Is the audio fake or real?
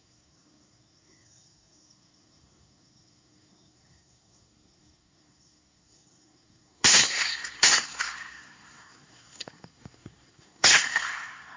fake